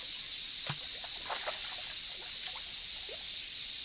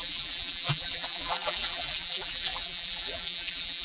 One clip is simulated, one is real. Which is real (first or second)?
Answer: first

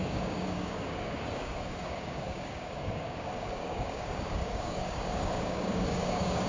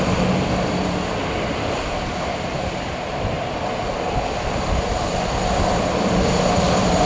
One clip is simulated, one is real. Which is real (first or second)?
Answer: second